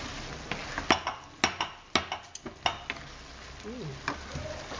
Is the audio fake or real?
real